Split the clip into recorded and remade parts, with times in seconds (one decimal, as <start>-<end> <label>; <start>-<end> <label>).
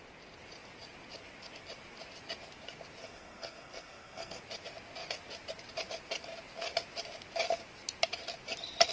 0.0-3.0 recorded; 3.0-4.4 remade; 4.4-8.9 recorded